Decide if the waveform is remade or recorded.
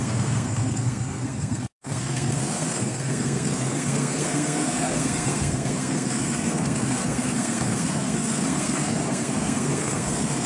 remade